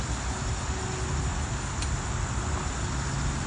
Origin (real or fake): real